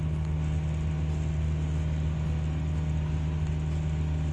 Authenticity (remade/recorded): recorded